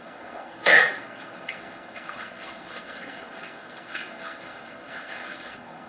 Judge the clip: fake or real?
fake